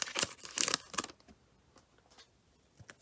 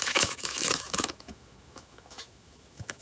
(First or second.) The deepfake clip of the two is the second